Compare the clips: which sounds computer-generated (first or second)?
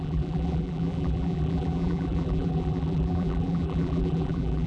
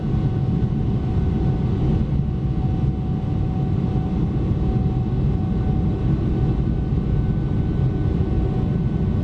first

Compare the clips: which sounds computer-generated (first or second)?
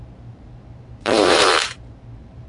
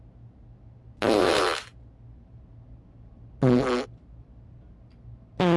first